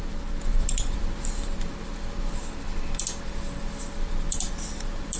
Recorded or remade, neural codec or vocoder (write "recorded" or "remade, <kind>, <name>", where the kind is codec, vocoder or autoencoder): recorded